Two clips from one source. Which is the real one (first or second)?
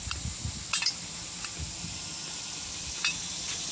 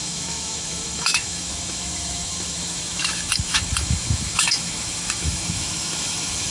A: first